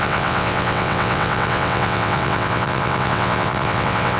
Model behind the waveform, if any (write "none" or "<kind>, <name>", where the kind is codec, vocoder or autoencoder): vocoder, WaveNeXt